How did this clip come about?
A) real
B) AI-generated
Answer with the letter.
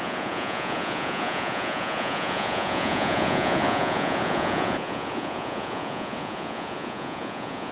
B